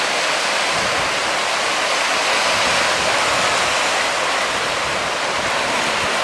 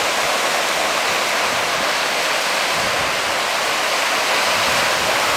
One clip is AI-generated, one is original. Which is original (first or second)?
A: first